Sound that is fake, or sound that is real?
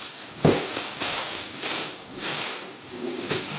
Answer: fake